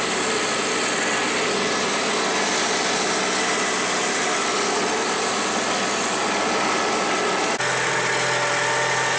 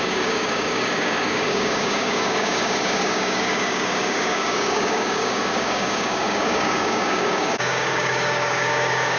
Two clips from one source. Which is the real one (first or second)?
first